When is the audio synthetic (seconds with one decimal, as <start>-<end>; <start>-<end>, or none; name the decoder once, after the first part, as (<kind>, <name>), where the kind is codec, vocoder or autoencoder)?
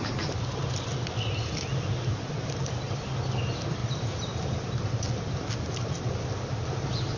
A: 3.8-4.7 (vocoder, BigVGAN v2)